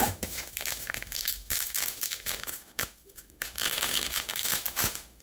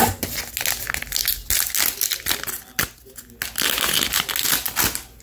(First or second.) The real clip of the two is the second